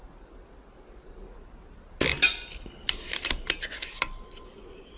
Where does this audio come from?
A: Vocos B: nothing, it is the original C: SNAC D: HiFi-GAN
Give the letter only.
B